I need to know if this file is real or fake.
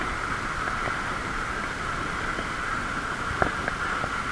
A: real